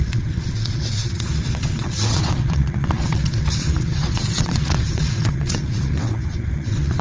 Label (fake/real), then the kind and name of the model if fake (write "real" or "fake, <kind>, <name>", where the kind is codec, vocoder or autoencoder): fake, vocoder, WaveNeXt